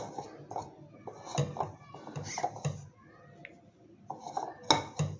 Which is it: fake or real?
real